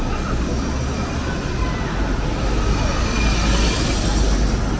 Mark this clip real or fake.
real